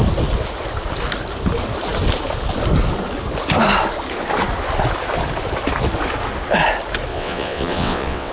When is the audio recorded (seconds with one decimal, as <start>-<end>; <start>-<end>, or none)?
0.0-7.1